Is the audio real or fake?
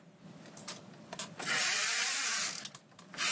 real